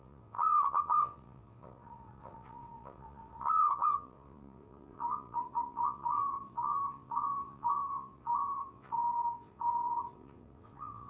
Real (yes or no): no